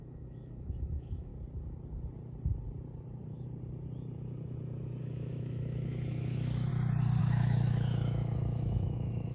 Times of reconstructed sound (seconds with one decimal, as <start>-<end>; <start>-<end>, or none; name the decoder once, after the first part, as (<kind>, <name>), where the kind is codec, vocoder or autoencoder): 0.0-1.3 (autoencoder, DAC-VAE); 5.0-6.7; 7.2-9.3